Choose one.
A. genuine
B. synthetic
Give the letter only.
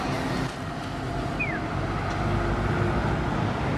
A